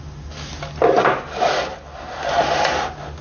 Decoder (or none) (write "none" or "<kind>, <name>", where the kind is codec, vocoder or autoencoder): none